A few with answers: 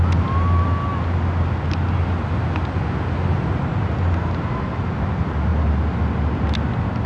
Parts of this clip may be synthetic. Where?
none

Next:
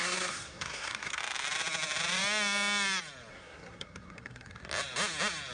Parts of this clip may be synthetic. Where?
0.0-1.2 (codec, SNAC); 3.3-4.6

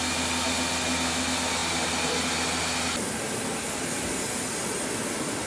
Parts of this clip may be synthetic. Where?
none

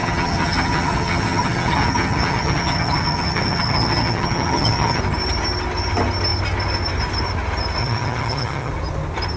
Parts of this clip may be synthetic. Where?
0.0-5.0 (vocoder, HiFi-GAN); 7.8-8.7

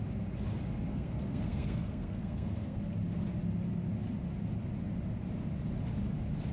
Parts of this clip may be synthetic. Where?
0.9-2.8 (codec, SNAC)